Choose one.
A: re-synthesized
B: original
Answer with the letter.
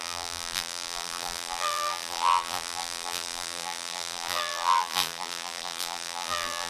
A